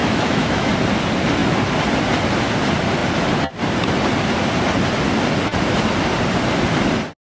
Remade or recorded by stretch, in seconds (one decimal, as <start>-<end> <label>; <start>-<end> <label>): 0.0-0.7 remade; 0.7-7.2 recorded